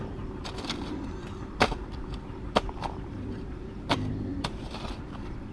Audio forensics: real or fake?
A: fake